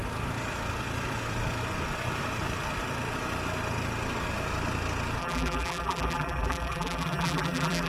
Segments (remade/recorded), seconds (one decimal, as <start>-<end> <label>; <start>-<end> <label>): 0.0-5.2 recorded; 5.2-7.9 remade